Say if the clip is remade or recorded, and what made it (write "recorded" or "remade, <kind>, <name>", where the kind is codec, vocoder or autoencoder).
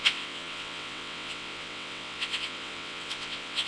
remade, vocoder, WaveNeXt